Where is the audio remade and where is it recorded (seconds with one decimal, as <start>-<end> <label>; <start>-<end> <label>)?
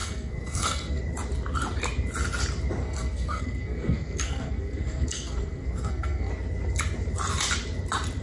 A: 0.0-1.0 remade; 1.0-2.8 recorded; 2.8-6.3 remade; 6.3-8.2 recorded